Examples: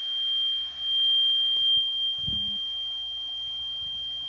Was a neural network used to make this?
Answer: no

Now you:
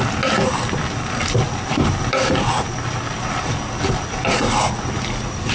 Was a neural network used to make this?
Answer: no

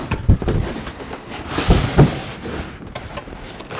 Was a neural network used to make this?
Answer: no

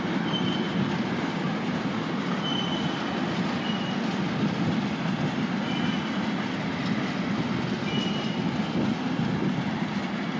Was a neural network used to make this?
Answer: no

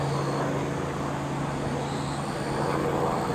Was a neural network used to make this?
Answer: no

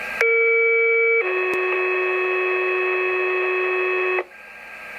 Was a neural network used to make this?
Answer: no